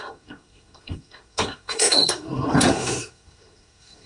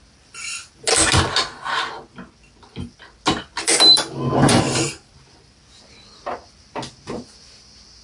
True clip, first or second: second